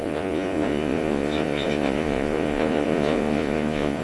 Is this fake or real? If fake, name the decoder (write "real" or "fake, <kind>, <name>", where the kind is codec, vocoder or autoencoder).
fake, vocoder, Vocos